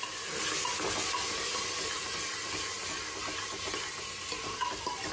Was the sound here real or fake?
real